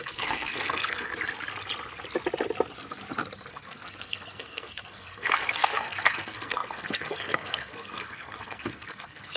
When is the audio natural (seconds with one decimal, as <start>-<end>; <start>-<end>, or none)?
1.1-3.5